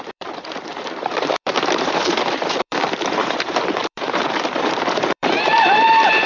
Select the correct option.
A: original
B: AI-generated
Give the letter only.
B